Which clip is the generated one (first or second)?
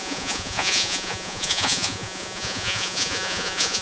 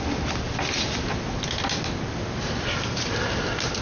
first